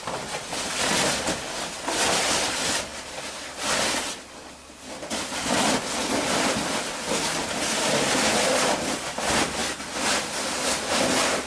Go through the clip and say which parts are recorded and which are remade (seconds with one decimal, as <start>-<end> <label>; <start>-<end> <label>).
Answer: 0.0-11.5 recorded